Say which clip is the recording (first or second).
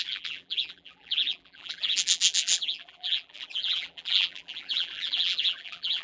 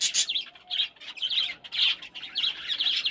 second